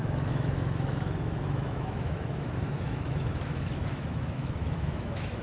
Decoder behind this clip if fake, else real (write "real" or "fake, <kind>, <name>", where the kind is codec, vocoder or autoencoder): fake, autoencoder, DAC-VAE